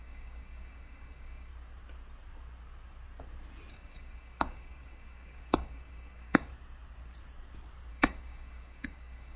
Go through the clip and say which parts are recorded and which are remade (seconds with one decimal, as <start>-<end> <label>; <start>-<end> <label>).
0.0-1.5 remade; 1.5-3.7 recorded; 3.7-6.5 remade; 6.5-7.9 recorded; 7.9-9.4 remade